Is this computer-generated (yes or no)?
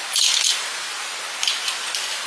no